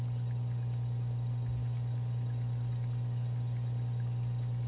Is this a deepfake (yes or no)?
no